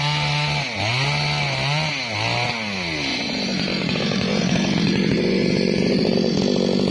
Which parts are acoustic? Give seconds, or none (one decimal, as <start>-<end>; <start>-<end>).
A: 0.0-3.1; 6.4-6.9